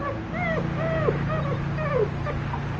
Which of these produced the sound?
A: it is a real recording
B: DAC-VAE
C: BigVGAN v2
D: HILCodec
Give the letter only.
A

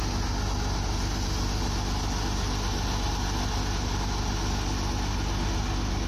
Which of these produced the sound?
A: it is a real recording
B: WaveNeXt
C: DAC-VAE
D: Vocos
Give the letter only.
A